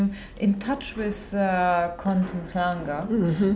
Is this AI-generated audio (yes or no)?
no